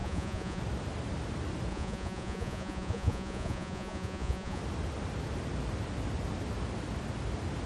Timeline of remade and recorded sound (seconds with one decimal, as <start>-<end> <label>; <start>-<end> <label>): 0.0-0.6 remade; 0.6-1.7 recorded; 1.7-4.6 remade; 4.6-7.7 recorded